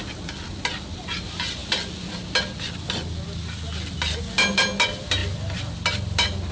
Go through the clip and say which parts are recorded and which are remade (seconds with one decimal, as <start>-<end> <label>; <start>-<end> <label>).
0.0-6.5 recorded